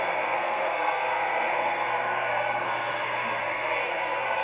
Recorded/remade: remade